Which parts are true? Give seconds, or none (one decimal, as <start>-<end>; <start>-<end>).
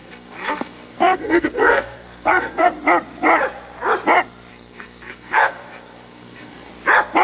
2.7-4.5; 6.7-7.2